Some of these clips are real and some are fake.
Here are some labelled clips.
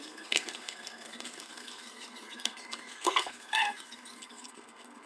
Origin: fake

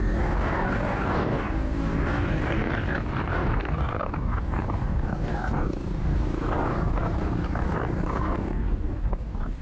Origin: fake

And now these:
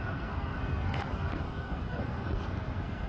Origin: fake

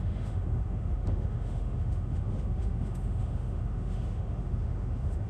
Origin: fake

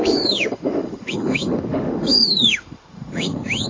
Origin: fake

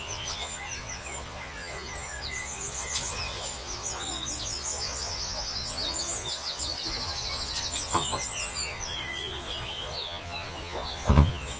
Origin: fake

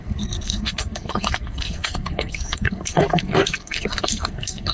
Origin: fake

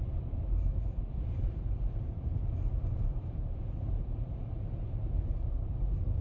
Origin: fake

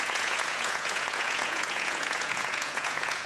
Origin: fake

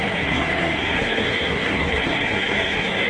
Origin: fake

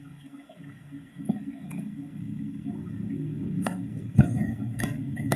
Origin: fake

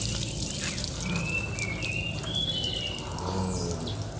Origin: real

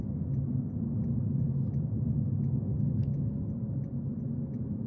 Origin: real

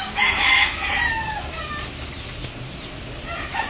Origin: real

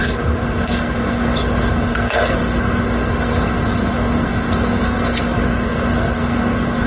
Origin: fake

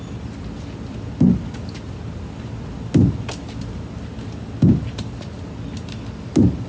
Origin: real